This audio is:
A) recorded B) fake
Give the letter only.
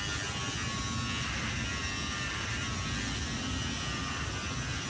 A